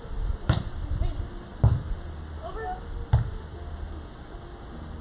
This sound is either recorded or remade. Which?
recorded